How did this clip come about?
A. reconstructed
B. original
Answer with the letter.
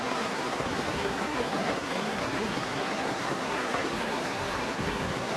A